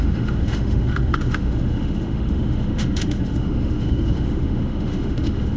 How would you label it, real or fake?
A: fake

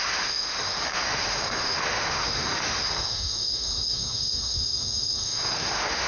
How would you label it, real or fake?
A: fake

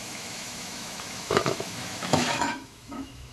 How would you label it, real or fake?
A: fake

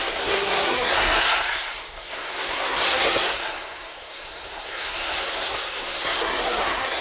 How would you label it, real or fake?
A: fake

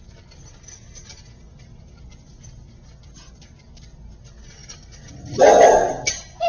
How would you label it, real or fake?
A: real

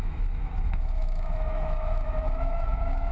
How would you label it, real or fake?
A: fake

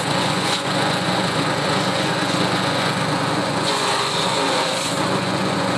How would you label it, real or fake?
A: fake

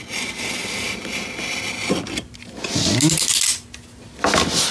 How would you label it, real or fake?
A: real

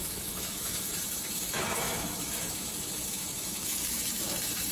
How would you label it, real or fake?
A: fake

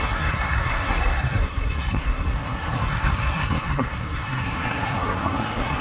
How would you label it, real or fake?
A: fake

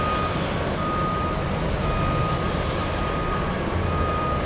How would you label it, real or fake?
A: real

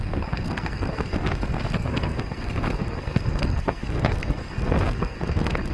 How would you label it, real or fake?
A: fake